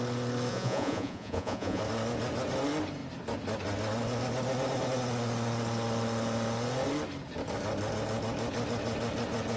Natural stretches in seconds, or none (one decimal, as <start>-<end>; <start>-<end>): 0.0-0.5; 1.8-9.6